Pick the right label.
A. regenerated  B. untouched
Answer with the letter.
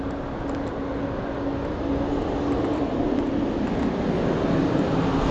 B